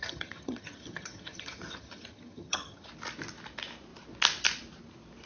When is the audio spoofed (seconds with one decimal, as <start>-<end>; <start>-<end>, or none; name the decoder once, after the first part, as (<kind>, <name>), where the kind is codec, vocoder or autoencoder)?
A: 0.0-2.9 (vocoder, HiFi-GAN)